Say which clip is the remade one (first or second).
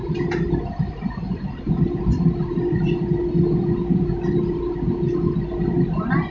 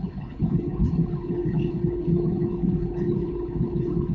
second